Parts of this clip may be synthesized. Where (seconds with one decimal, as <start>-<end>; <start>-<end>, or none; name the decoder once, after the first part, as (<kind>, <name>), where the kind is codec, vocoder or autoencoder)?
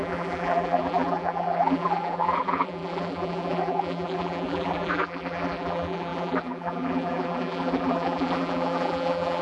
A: 0.0-9.4 (vocoder, BigVGAN v2)